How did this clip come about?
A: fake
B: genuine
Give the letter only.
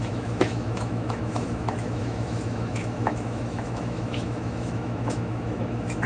A